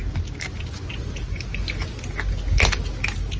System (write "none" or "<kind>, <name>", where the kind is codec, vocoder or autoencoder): none